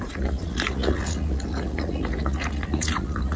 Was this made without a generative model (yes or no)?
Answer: no